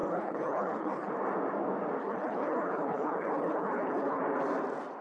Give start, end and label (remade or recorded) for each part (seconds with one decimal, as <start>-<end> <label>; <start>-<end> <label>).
0.0-1.1 remade; 1.1-2.0 recorded; 2.0-4.2 remade; 4.2-5.0 recorded